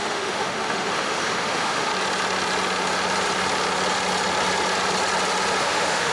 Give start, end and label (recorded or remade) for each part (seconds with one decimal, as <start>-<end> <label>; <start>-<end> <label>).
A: 0.0-1.9 remade; 1.9-5.6 recorded; 5.6-6.1 remade

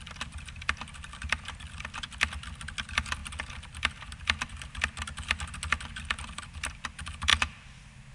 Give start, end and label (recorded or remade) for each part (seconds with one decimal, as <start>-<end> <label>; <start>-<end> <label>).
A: 0.0-8.1 recorded

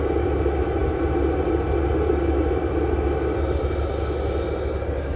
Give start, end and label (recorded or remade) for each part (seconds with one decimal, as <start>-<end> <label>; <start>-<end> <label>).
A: 0.0-5.2 recorded

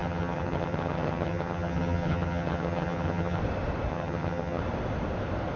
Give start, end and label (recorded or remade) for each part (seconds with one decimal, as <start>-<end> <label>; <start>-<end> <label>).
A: 0.0-3.4 remade; 3.4-3.9 recorded; 3.9-4.6 remade; 4.6-5.6 recorded

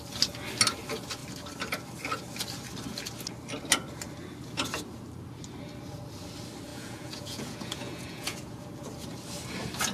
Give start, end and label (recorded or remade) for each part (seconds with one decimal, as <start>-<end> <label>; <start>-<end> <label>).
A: 0.0-6.7 recorded; 6.7-8.7 remade; 8.7-9.9 recorded

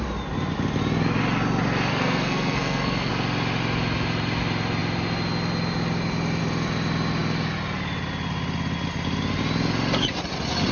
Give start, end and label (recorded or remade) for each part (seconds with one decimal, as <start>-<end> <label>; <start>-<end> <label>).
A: 0.0-1.9 recorded; 1.9-3.1 remade; 3.1-10.7 recorded

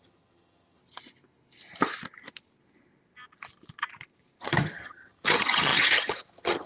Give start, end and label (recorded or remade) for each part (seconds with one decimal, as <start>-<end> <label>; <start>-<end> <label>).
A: 0.0-0.8 remade; 0.8-4.4 recorded; 4.4-6.7 remade

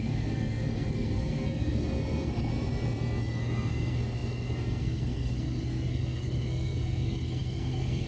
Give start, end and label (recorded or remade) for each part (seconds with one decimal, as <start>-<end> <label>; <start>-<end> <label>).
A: 0.0-2.5 remade; 2.5-3.2 recorded; 3.2-8.1 remade